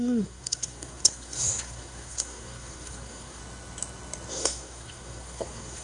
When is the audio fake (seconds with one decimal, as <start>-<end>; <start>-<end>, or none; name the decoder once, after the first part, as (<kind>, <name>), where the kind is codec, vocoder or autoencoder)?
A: 0.0-3.4 (codec, SNAC); 4.3-5.8

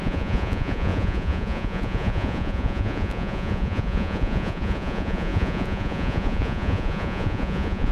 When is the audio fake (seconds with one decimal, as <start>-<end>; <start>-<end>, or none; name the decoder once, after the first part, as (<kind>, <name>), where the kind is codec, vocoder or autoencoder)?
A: 0.0-7.9 (vocoder, Vocos)

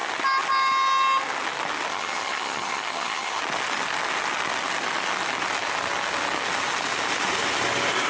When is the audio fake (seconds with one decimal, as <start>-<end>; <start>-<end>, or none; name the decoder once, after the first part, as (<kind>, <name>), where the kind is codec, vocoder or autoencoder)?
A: 1.9-3.4 (vocoder, HiFi-GAN)

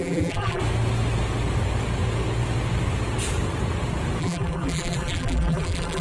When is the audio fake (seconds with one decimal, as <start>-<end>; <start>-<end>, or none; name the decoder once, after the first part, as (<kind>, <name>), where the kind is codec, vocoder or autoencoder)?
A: 0.0-0.6 (vocoder, BigVGAN v2); 4.2-6.0

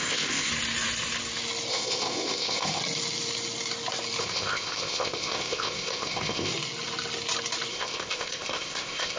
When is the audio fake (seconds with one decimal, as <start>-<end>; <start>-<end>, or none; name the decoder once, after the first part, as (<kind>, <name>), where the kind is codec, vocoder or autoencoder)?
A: 0.0-0.5 (codec, ZipCodec); 1.7-2.8; 4.2-6.5; 7.7-9.2